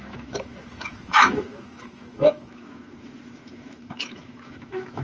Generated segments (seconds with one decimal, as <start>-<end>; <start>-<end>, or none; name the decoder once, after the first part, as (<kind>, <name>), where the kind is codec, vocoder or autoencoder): 0.0-5.0 (autoencoder, DAC-VAE)